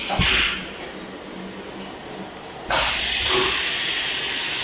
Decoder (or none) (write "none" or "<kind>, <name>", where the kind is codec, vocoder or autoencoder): none